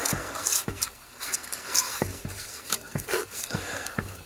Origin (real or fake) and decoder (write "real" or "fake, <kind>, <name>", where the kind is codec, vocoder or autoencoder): fake, codec, SNAC